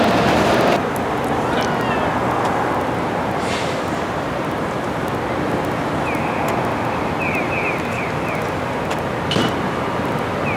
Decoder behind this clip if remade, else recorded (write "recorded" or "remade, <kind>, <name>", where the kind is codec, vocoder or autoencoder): recorded